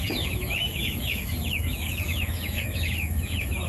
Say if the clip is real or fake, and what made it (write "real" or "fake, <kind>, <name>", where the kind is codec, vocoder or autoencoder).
fake, autoencoder, DAC-VAE